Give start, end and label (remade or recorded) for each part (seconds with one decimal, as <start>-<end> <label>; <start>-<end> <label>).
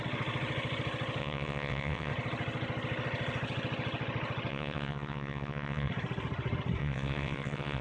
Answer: 0.0-1.2 recorded; 1.2-2.1 remade; 2.1-4.5 recorded; 4.5-5.9 remade; 5.9-6.8 recorded; 6.8-7.8 remade